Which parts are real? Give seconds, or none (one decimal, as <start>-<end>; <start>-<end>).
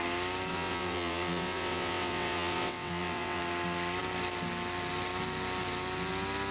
0.0-0.5; 3.4-6.5